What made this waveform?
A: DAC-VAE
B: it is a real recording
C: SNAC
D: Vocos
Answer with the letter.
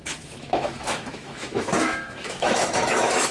A